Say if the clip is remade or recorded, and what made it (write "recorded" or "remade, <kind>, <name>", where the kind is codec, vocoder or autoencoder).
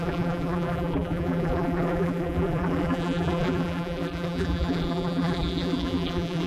remade, vocoder, BigVGAN v2